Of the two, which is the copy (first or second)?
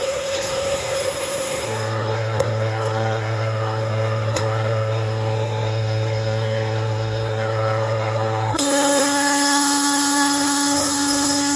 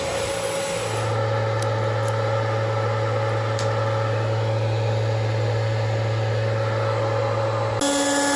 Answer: first